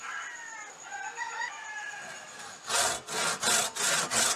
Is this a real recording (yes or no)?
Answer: yes